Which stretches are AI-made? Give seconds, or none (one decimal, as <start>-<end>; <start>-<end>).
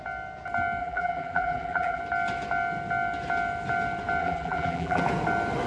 0.8-2.0; 4.2-5.0